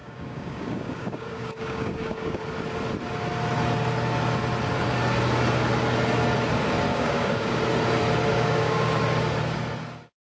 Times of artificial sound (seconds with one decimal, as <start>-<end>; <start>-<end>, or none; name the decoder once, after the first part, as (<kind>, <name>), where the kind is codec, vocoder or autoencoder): 0.0-2.4 (codec, DAC); 6.9-7.6; 8.3-9.0

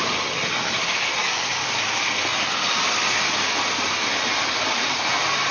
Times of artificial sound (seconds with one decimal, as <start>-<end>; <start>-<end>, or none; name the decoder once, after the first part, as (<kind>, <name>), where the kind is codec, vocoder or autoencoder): 1.2-1.8 (codec, DAC)

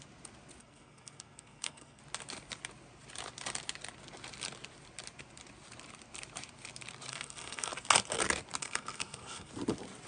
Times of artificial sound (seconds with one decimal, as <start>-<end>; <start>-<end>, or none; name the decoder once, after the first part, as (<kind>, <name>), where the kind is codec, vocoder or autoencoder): 0.6-2.0 (codec, SNAC); 7.1-7.7; 8.6-9.5

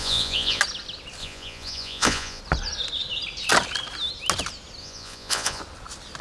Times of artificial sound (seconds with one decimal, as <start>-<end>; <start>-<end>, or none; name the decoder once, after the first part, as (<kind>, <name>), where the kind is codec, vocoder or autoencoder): 0.0-0.6 (vocoder, Vocos); 1.2-2.4; 4.8-5.6

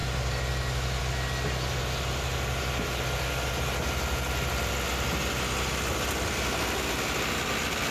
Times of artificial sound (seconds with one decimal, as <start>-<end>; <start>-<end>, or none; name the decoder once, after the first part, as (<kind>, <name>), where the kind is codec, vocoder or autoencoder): none